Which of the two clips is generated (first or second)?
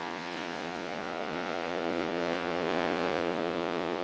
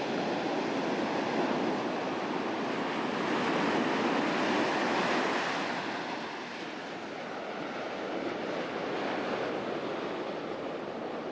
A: first